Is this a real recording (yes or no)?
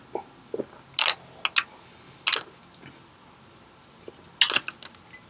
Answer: yes